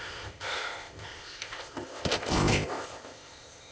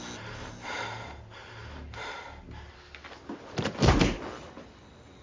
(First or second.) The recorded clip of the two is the second